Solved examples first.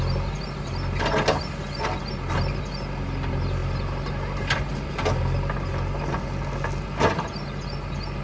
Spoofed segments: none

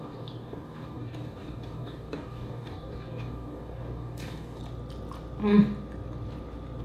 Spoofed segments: 0.0-4.6 (codec, DAC)